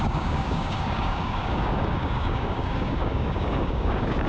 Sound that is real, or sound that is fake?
fake